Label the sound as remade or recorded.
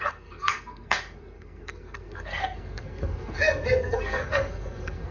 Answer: remade